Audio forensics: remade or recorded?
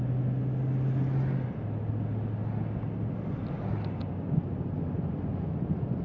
recorded